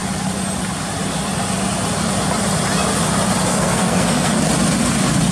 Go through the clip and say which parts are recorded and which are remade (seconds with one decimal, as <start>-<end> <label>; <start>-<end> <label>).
0.0-3.5 recorded; 3.5-4.4 remade; 4.4-5.3 recorded